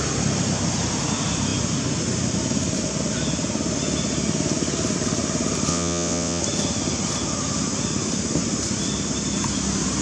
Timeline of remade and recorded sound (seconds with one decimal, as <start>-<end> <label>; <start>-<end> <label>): 0.0-5.7 recorded; 5.7-6.4 remade; 6.4-10.0 recorded